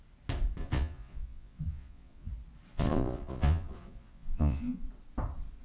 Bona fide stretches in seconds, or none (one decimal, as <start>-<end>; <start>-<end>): 0.0-0.6; 2.3-2.7; 4.8-5.6